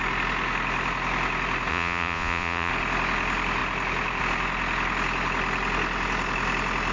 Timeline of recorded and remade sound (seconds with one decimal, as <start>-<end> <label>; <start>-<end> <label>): 0.0-1.7 recorded; 1.7-2.7 remade; 2.7-6.9 recorded